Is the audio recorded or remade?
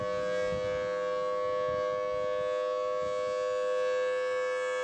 recorded